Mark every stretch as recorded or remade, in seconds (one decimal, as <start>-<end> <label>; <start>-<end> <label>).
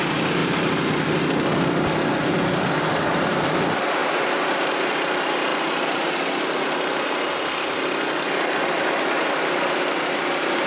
0.0-4.0 recorded; 4.0-4.7 remade; 4.7-5.5 recorded; 5.5-10.7 remade